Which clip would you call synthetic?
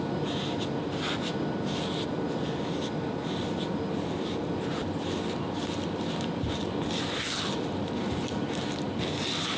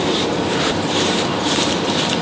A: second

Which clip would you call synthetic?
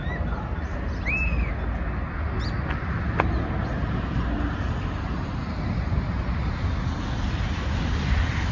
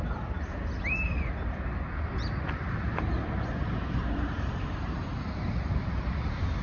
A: second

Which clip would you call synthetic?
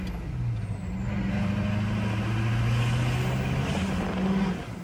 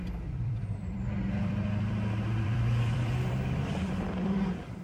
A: second